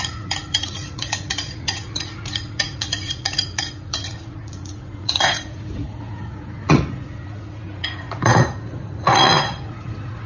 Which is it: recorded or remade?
remade